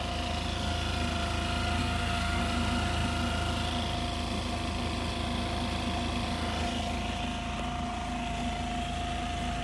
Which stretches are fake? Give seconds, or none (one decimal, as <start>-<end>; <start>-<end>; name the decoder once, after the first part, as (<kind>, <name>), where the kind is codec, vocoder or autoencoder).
1.8-2.4 (codec, SNAC)